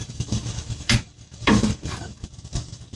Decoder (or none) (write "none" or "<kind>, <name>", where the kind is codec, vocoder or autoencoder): codec, DAC